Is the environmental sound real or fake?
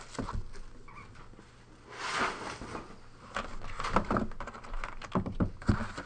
real